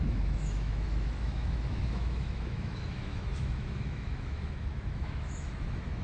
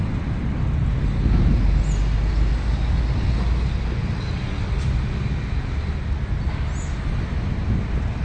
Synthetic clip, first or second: first